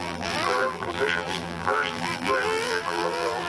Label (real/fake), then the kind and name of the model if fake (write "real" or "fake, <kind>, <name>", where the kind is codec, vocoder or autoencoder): fake, vocoder, BigVGAN v2